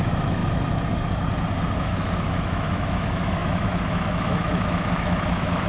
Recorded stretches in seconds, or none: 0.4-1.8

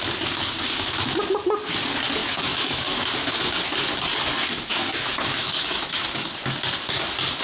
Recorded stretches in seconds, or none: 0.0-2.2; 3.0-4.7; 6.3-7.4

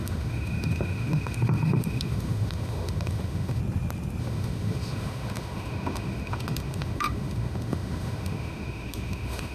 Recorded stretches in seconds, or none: 3.6-4.2

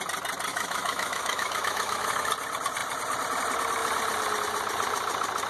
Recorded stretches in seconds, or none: 0.0-0.5; 2.3-5.5